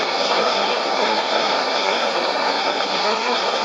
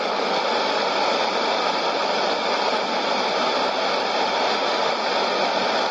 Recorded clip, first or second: second